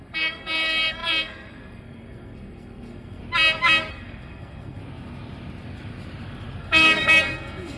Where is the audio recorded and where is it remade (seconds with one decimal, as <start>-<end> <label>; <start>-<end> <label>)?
0.0-3.2 remade; 3.2-3.9 recorded; 3.9-4.8 remade; 4.8-6.6 recorded; 6.6-7.8 remade